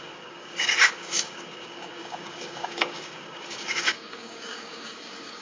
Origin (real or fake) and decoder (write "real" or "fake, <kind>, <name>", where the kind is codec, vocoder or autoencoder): fake, codec, DAC